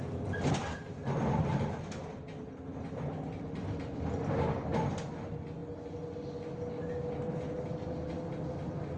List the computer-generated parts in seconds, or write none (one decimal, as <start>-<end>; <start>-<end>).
none